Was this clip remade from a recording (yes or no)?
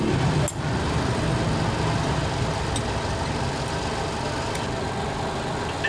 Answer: no